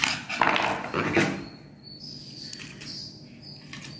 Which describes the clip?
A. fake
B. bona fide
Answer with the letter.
B